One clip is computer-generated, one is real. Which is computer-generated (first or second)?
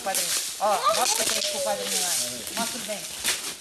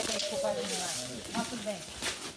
second